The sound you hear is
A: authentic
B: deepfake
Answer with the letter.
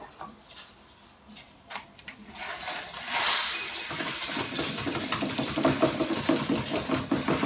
B